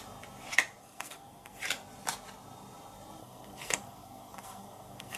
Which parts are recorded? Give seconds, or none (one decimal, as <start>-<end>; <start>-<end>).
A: 0.0-0.8; 1.6-3.2